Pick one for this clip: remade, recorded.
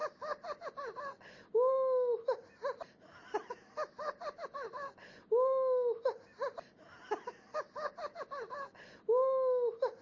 recorded